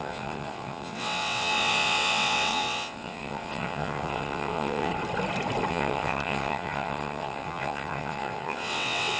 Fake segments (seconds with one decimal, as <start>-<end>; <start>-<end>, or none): 0.0-4.9; 5.7-9.2